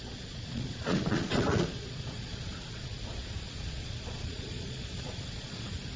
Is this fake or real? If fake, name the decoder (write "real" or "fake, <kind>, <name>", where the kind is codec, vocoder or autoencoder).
fake, vocoder, Vocos